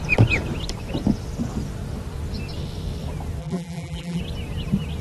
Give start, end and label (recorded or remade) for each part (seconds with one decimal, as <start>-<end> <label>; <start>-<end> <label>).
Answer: 0.0-3.4 recorded; 3.4-4.2 remade; 4.2-5.0 recorded